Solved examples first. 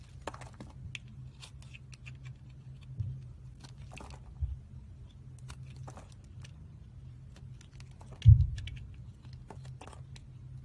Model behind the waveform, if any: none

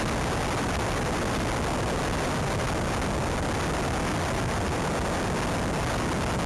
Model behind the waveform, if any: none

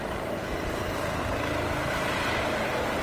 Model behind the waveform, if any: none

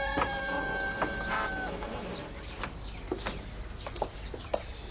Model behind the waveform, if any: none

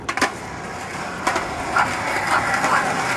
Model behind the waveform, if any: vocoder, BigVGAN v2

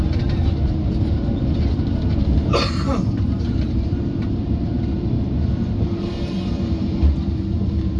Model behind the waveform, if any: vocoder, BigVGAN v2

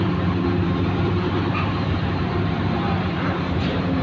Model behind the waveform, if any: vocoder, BigVGAN v2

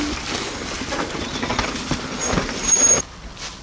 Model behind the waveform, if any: none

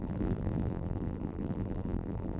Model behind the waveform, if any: vocoder, BigVGAN v2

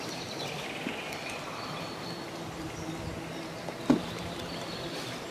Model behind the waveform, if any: none